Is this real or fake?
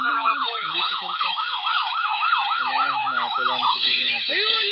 fake